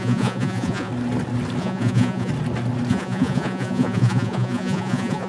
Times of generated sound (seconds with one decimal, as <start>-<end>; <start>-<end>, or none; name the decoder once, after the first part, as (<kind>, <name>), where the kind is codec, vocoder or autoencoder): 0.0-0.9 (vocoder, Vocos); 1.6-2.3; 2.9-5.3